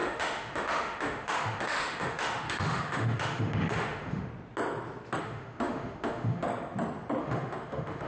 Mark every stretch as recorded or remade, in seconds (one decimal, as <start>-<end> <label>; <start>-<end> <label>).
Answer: 0.0-4.3 remade; 4.3-5.2 recorded; 5.2-6.5 remade; 6.5-7.2 recorded; 7.2-8.1 remade